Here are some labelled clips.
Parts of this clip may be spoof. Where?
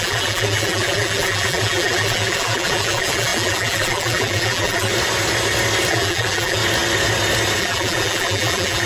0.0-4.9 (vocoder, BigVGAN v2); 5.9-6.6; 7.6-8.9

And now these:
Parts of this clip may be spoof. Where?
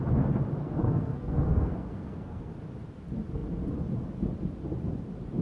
0.6-2.5 (codec, SNAC)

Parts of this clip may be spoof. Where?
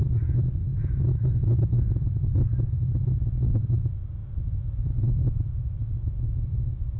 0.7-1.9 (autoencoder, DAC-VAE); 2.3-2.9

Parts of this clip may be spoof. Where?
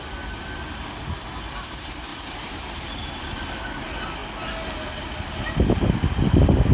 2.1-3.1 (vocoder, BigVGAN v2)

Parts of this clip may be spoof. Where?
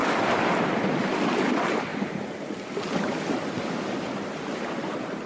0.5-1.9 (vocoder, BigVGAN v2)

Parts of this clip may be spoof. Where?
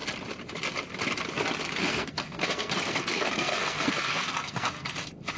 1.8-5.0 (codec, SNAC)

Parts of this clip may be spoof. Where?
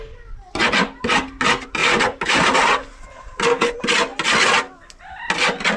1.8-2.5 (vocoder, BigVGAN v2)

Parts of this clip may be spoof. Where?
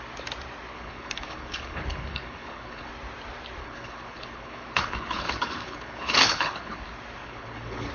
0.7-2.9 (codec, HILCodec); 3.6-6.8; 7.2-7.9